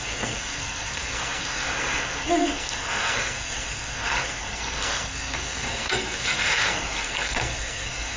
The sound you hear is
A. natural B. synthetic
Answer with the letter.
B